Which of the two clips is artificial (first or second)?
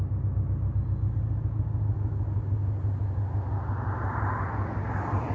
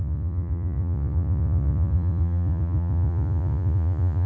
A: second